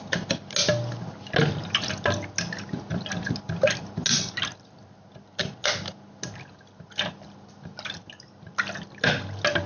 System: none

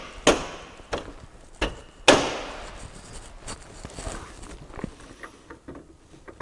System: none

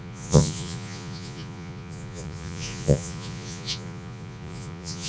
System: vocoder, Vocos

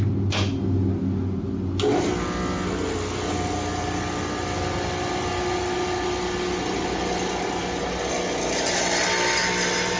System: none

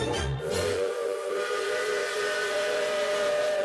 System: vocoder, Vocos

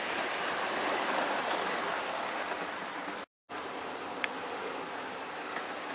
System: none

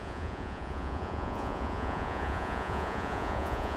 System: vocoder, Vocos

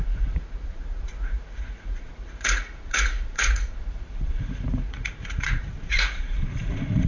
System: vocoder, Vocos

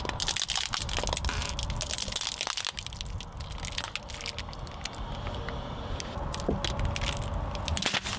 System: none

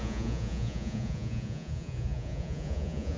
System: vocoder, Vocos